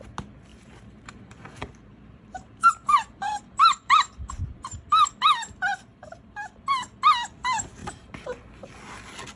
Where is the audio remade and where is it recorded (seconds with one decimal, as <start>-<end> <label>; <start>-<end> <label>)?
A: 0.0-0.5 recorded; 0.5-4.3 remade; 4.3-5.7 recorded; 5.7-6.6 remade; 6.6-7.8 recorded; 7.8-8.5 remade; 8.5-9.4 recorded